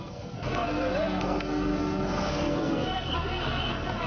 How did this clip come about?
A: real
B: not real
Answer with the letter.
B